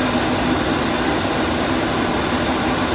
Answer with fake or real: real